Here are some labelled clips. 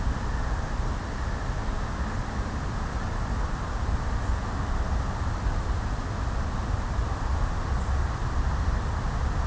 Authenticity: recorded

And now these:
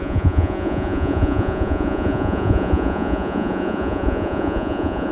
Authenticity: remade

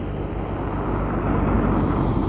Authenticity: recorded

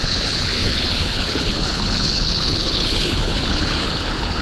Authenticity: remade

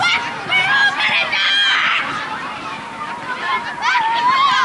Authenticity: recorded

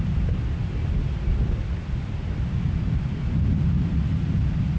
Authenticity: recorded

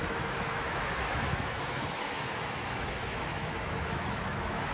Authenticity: remade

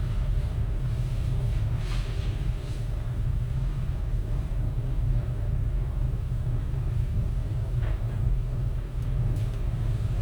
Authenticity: remade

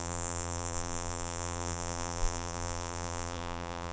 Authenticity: remade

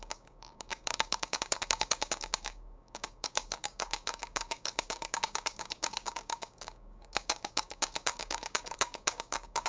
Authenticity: remade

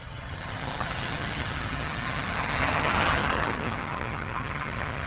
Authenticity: remade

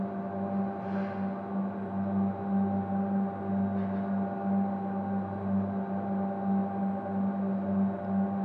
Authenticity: recorded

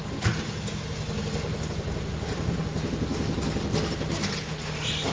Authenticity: recorded